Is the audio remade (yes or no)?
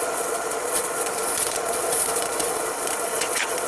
yes